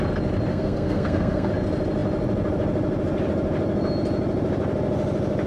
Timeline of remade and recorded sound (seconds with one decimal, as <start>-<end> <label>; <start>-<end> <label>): 0.0-0.5 recorded; 0.5-1.5 remade; 1.5-5.5 recorded